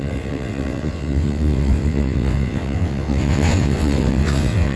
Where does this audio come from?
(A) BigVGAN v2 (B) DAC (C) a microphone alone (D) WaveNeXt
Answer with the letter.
D